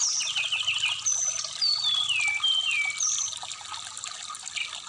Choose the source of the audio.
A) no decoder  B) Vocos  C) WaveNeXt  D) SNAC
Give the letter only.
A